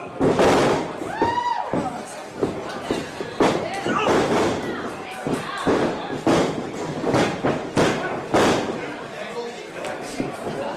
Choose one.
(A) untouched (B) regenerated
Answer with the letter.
A